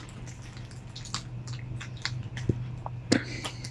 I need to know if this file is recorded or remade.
recorded